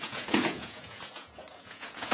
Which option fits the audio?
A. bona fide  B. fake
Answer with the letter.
B